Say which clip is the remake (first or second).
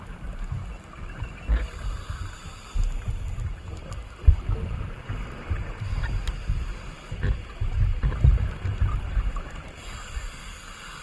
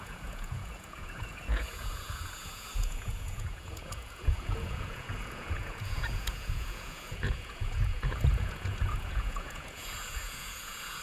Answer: second